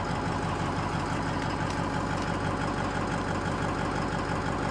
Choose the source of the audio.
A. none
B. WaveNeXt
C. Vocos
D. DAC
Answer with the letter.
A